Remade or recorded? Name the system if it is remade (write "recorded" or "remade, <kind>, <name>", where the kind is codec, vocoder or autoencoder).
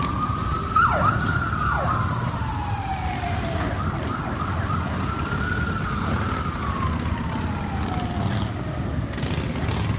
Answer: recorded